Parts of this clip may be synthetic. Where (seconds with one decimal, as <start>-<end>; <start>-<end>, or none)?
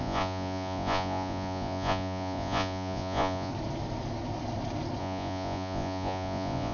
0.0-3.5; 5.0-6.7